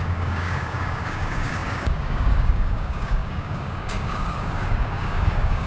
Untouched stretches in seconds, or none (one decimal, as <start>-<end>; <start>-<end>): none